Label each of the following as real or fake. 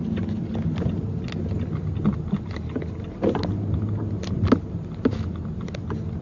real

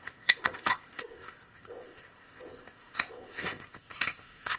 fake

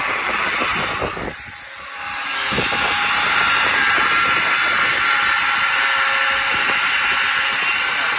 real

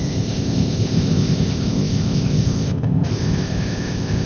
fake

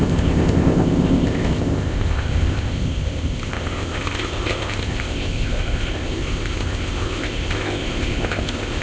fake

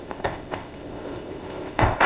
fake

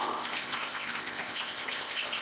fake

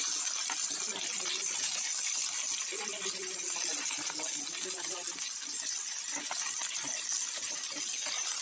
real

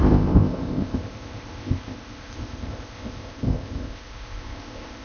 fake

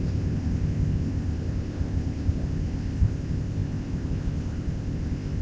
fake